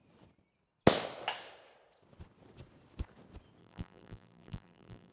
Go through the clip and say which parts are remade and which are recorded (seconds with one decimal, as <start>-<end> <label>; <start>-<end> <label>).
0.0-3.6 recorded; 3.6-5.1 remade